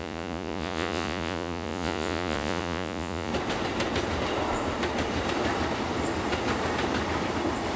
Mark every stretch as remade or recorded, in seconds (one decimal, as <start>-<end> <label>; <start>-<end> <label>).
0.0-3.3 remade; 3.3-7.8 recorded

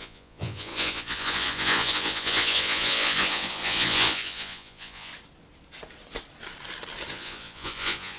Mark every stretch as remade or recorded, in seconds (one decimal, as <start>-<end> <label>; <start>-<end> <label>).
0.0-5.1 remade; 5.1-7.1 recorded; 7.1-8.2 remade

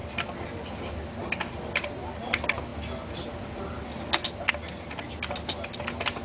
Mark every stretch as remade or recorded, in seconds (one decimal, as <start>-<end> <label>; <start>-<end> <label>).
0.0-6.2 recorded

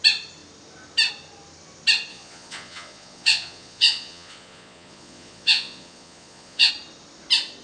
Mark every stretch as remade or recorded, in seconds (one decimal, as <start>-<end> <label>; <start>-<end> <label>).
0.0-2.1 recorded; 2.1-6.7 remade; 6.7-7.6 recorded

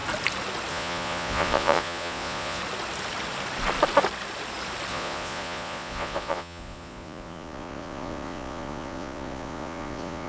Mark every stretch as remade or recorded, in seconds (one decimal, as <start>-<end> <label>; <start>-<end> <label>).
0.0-0.7 recorded; 0.7-2.6 remade; 2.6-4.9 recorded; 4.9-10.3 remade